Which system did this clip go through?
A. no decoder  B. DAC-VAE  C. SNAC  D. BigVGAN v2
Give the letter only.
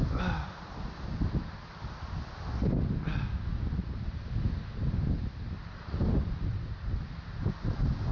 A